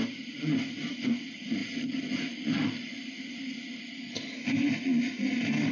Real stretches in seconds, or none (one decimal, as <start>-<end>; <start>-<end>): 0.0-5.7

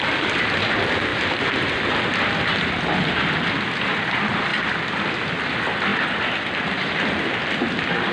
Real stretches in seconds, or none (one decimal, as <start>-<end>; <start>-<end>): 4.5-5.1; 5.9-6.5

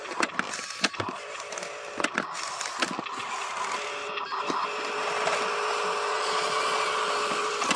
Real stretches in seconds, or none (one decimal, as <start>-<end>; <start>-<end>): 0.0-6.1; 7.0-7.8

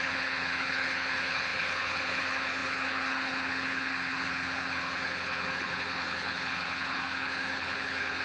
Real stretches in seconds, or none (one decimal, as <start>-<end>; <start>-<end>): none

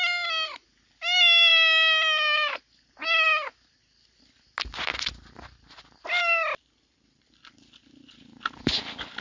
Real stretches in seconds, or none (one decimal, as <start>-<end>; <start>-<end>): 0.0-9.2

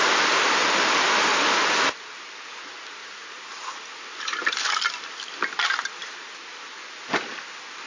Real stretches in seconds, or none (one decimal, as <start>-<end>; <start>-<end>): 0.0-3.0; 3.8-7.9

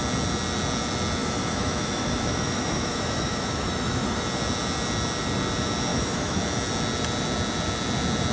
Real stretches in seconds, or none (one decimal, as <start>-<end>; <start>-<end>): 0.0-1.2; 4.2-5.9; 6.4-8.3

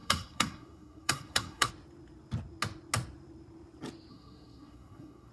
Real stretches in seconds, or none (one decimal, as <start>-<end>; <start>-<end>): 1.7-4.1